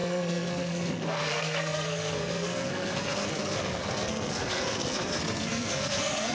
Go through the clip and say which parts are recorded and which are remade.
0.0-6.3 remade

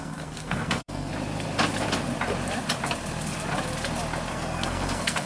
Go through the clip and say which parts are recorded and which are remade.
0.0-1.1 remade; 1.1-4.3 recorded; 4.3-5.3 remade

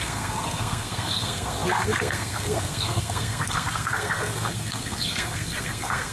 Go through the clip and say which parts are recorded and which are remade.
0.0-6.1 remade

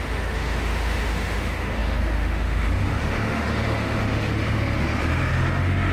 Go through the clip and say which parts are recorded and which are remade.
0.0-5.9 remade

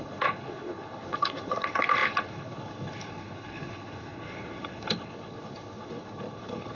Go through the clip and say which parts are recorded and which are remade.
0.0-6.7 remade

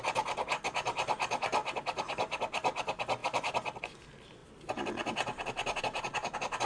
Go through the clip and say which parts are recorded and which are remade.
0.0-6.7 recorded

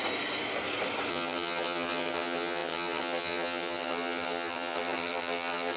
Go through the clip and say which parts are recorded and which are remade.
0.0-1.1 recorded; 1.1-5.8 remade